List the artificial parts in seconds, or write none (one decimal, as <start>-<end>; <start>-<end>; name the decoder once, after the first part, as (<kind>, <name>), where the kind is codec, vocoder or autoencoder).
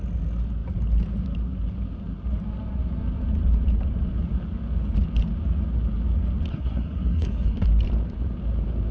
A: 6.5-7.7 (codec, SNAC)